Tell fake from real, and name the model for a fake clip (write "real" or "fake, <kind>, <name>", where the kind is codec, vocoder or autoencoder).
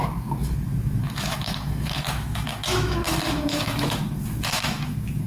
fake, autoencoder, DAC-VAE